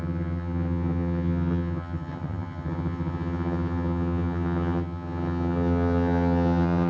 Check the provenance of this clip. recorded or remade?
remade